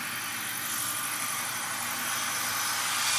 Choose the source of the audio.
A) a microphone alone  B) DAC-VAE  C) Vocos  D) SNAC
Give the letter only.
A